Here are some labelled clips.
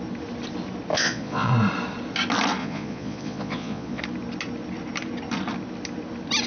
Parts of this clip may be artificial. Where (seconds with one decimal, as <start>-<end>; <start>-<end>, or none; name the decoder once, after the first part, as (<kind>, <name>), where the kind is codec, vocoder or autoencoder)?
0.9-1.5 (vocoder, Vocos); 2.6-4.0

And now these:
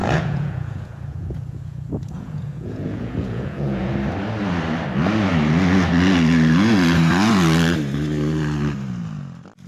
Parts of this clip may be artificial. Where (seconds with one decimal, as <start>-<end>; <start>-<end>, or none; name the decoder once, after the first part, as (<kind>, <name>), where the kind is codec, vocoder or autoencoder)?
0.0-3.9 (vocoder, Vocos)

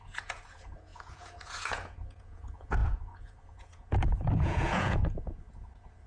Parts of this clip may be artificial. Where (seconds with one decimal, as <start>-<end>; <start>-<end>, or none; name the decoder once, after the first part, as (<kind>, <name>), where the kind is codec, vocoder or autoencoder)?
0.0-6.1 (vocoder, Vocos)

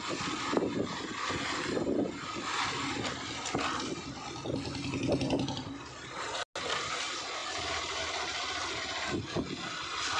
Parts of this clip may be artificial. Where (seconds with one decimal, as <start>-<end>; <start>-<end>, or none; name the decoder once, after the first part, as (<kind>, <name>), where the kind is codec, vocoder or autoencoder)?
none